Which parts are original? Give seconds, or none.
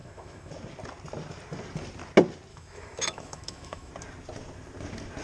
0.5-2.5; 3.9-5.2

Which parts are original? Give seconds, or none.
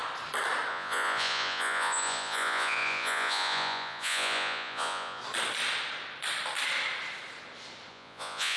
0.0-0.7; 5.2-7.9